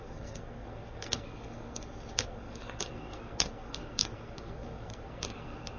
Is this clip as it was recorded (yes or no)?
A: no